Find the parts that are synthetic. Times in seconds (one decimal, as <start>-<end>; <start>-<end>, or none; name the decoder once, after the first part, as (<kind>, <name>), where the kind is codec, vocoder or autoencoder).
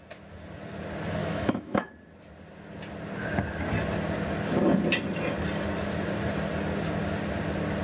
1.2-1.9 (autoencoder, DAC-VAE)